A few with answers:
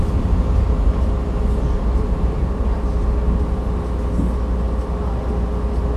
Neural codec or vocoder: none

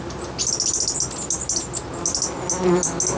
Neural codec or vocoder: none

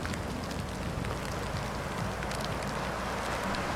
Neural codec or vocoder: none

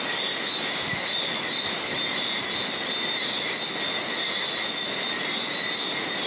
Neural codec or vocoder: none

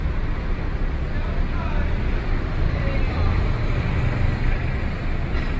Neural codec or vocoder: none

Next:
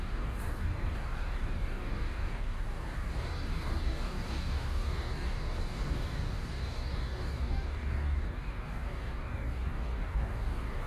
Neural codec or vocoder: codec, DAC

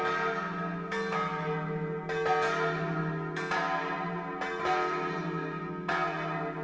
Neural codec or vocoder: none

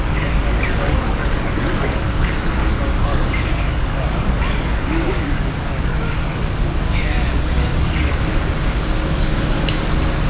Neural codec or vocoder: codec, DAC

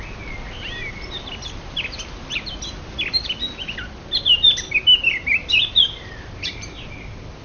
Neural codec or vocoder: none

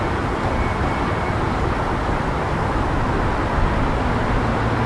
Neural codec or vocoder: none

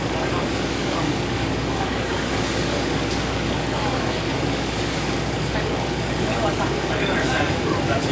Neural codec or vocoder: codec, DAC